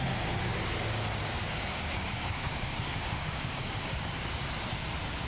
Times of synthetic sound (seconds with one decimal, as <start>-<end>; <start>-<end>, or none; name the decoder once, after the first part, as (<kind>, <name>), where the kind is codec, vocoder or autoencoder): 1.3-4.5 (codec, DAC)